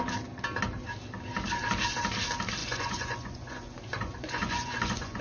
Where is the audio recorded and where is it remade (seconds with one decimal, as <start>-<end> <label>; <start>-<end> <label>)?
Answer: 0.0-2.6 recorded; 2.6-5.2 remade